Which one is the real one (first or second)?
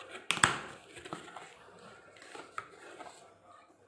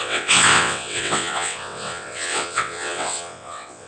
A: first